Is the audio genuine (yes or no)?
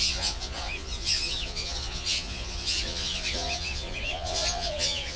no